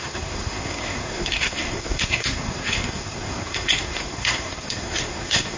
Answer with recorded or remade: remade